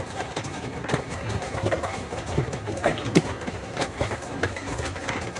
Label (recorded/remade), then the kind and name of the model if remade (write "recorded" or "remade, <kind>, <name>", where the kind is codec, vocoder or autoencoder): remade, codec, SNAC